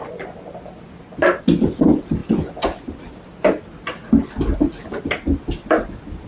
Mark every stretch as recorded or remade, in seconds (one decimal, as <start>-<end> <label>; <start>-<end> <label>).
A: 0.0-6.3 recorded

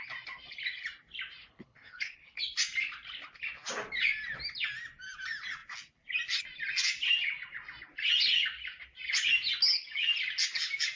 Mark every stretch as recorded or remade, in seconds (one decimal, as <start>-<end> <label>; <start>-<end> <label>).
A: 0.0-1.4 recorded; 1.4-2.4 remade; 2.4-11.0 recorded

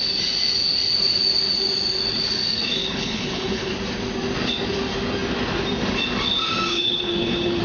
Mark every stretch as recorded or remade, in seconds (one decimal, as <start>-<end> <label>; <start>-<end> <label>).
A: 0.0-2.8 recorded; 2.8-3.7 remade; 3.7-6.7 recorded; 6.7-7.6 remade